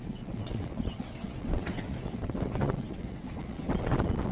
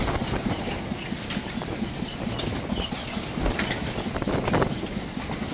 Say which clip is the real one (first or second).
second